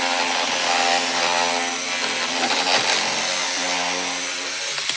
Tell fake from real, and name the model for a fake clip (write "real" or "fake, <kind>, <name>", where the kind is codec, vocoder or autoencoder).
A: real